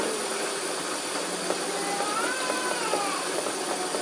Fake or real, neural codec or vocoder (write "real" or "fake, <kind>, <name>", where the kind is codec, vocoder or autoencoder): real